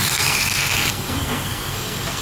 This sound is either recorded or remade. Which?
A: remade